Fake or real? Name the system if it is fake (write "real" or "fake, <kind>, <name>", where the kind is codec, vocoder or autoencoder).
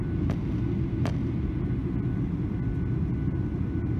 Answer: real